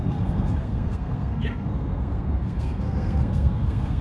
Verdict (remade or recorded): remade